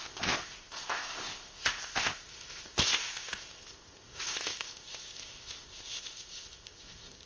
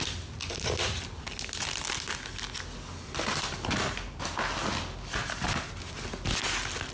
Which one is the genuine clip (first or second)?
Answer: second